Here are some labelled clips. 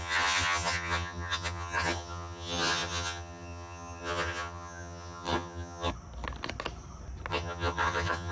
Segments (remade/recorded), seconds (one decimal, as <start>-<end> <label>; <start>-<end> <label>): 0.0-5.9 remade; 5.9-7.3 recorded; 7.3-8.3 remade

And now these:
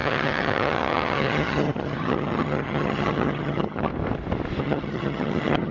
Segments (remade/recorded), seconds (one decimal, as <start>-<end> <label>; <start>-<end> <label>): 0.0-3.9 remade; 3.9-4.6 recorded; 4.6-5.7 remade

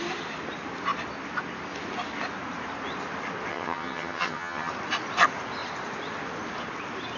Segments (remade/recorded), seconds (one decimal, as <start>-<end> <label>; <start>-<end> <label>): 0.0-3.5 recorded; 3.5-4.7 remade; 4.7-7.2 recorded